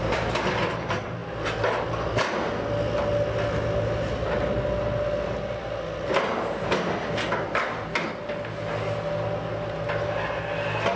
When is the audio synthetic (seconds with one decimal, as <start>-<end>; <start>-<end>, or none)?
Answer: none